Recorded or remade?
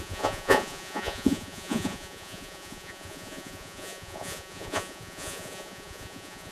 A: remade